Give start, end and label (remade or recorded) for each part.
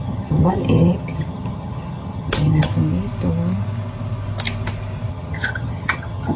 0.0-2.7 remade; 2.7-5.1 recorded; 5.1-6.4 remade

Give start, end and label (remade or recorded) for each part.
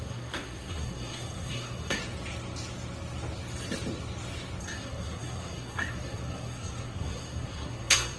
0.0-2.0 remade; 2.0-4.6 recorded; 4.6-8.2 remade